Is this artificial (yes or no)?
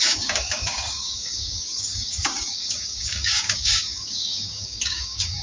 yes